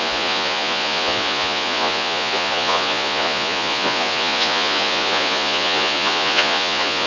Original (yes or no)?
no